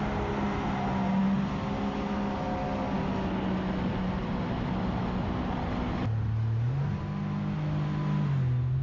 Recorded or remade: recorded